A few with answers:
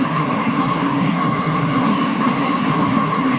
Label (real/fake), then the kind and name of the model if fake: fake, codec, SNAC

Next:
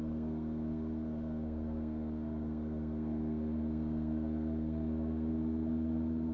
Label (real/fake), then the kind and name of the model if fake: fake, codec, SNAC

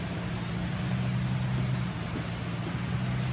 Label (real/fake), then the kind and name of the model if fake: real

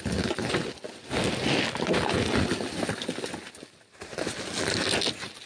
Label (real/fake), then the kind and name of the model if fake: real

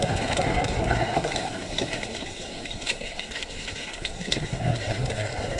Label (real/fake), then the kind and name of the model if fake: fake, codec, SNAC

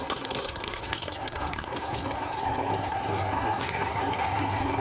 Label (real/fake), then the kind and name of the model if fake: fake, codec, SNAC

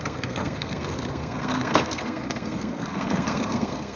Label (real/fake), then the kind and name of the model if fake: fake, codec, SNAC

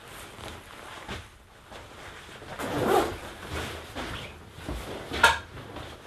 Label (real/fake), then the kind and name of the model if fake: real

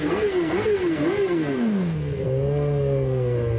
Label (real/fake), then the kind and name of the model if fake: fake, codec, SNAC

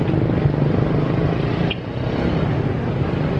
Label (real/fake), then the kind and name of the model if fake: real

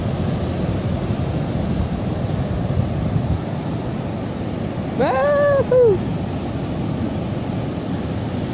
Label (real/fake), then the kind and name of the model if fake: real